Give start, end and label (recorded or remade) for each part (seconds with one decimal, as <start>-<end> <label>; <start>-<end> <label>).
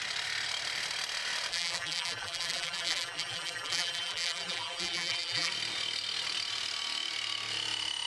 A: 0.0-1.5 recorded; 1.5-5.5 remade; 5.5-8.1 recorded